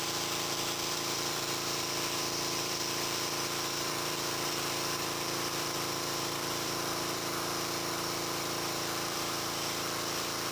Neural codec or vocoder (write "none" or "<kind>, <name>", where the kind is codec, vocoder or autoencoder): vocoder, BigVGAN v2